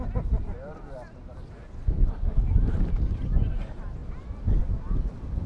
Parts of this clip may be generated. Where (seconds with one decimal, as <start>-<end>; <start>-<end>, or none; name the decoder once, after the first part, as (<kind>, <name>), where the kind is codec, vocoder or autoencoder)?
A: 0.0-1.6 (vocoder, BigVGAN v2); 2.5-4.0; 4.6-5.5